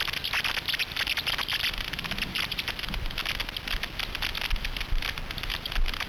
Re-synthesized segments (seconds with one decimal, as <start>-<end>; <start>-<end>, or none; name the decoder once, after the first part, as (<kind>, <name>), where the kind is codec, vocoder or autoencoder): 0.0-0.8 (vocoder, BigVGAN v2); 1.4-3.2; 5.5-6.1